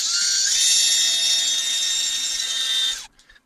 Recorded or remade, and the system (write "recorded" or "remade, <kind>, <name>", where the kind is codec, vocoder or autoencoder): recorded